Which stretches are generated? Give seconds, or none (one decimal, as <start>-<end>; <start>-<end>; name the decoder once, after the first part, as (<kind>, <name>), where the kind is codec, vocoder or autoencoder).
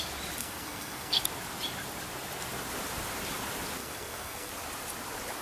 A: 0.4-1.2 (codec, SNAC); 3.8-4.5